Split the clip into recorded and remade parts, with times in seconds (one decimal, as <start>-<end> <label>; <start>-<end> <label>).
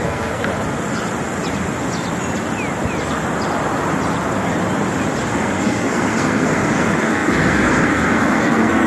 0.0-0.5 remade; 0.5-5.3 recorded; 5.3-8.9 remade